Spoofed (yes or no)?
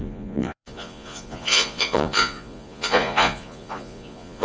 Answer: yes